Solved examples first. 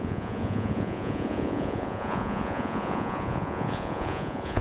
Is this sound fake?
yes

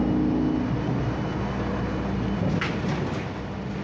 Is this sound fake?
no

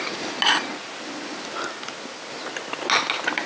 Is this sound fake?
no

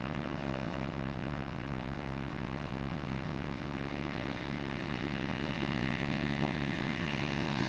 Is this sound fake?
yes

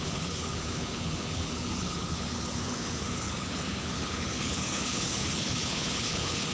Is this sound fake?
yes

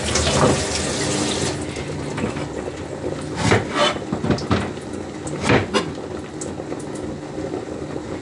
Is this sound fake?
no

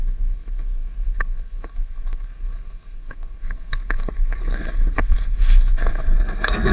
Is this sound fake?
yes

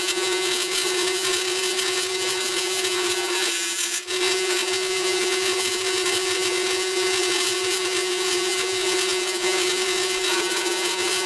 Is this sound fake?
yes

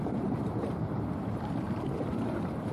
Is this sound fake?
yes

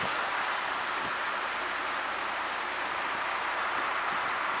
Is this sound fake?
no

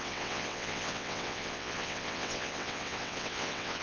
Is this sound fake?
yes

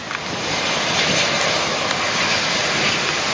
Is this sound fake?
no